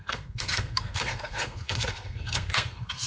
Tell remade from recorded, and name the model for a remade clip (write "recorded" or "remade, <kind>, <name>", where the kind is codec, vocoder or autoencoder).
remade, codec, SNAC